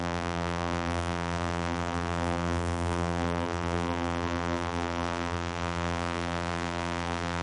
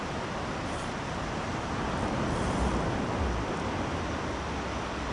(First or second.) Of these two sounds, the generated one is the first